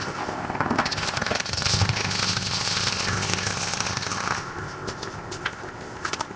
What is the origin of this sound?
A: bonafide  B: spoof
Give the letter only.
B